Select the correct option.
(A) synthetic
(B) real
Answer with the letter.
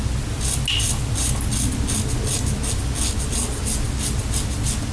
B